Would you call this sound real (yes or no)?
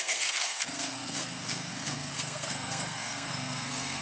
no